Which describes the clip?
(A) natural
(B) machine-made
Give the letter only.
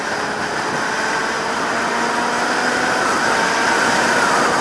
A